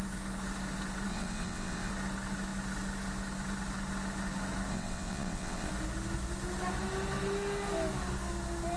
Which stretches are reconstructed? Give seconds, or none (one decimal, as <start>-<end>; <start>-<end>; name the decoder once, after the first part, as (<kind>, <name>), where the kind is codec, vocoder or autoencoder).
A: 1.1-1.9 (vocoder, WaveNeXt); 4.7-5.7